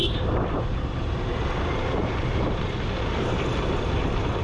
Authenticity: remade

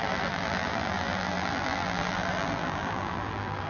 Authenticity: remade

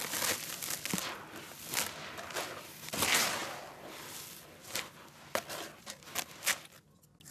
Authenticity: recorded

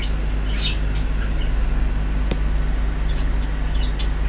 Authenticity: recorded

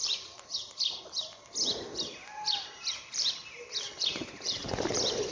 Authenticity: remade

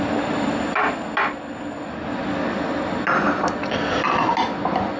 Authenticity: recorded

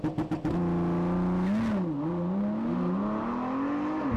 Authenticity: recorded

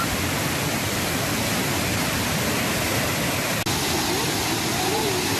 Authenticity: recorded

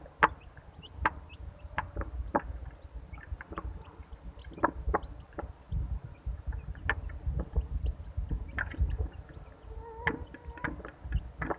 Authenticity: remade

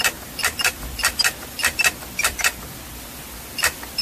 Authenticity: recorded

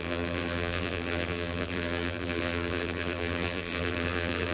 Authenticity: remade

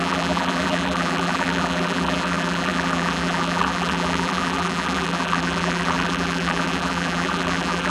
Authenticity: remade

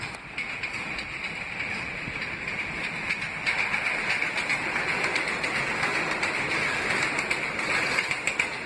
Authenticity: recorded